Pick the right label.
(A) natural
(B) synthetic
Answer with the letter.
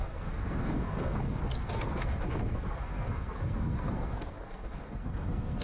B